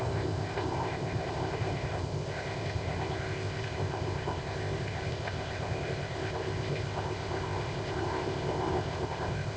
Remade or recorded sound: remade